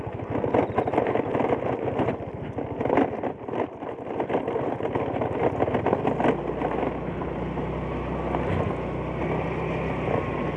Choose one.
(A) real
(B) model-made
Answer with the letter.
A